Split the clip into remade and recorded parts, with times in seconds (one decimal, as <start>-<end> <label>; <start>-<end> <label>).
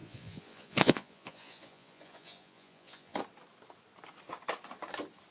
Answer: 0.0-3.2 remade; 3.2-5.3 recorded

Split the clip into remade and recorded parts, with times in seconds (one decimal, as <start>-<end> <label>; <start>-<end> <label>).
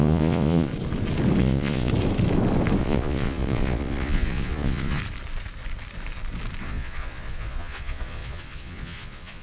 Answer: 0.0-0.7 remade; 0.7-1.4 recorded; 1.4-1.9 remade; 1.9-2.8 recorded; 2.8-5.0 remade; 5.0-6.6 recorded; 6.6-9.4 remade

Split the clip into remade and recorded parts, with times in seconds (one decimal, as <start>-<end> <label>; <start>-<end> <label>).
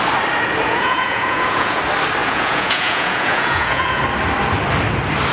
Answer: 0.0-0.7 recorded; 0.7-1.8 remade; 1.8-2.2 recorded; 2.2-4.0 remade; 4.0-5.3 recorded